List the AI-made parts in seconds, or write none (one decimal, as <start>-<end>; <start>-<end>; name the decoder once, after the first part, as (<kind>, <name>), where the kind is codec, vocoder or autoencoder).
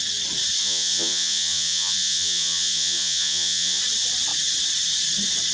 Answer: 0.6-3.8 (vocoder, Vocos)